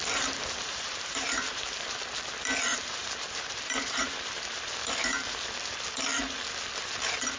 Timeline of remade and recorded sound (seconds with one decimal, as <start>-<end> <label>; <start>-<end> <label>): 0.0-1.9 remade; 1.9-2.7 recorded; 2.7-4.7 remade; 4.7-7.4 recorded